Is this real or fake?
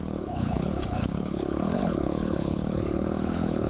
fake